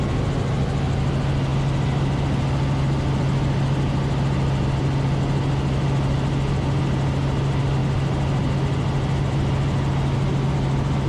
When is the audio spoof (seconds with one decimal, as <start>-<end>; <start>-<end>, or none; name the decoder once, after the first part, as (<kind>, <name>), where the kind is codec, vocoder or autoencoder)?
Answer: none